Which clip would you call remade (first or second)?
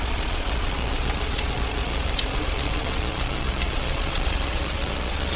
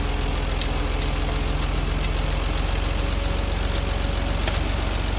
first